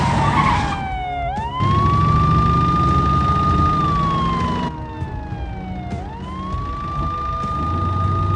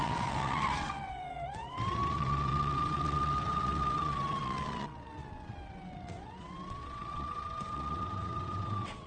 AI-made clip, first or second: second